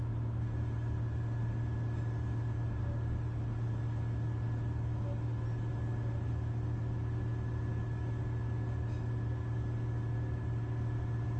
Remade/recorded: recorded